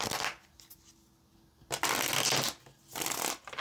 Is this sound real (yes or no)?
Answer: yes